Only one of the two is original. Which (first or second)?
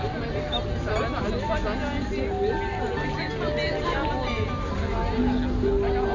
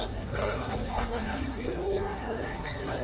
first